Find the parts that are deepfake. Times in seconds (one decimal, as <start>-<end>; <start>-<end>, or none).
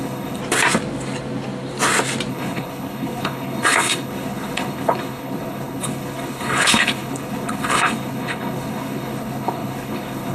0.0-0.4; 2.3-10.3